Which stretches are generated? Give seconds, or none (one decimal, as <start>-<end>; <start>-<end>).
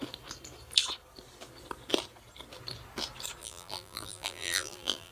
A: 3.4-5.1